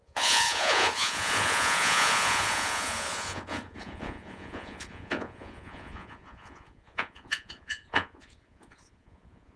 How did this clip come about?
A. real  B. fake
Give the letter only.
B